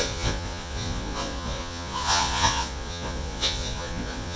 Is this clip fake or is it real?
fake